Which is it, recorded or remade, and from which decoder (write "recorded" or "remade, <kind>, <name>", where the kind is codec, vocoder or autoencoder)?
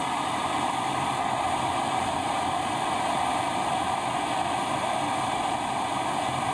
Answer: recorded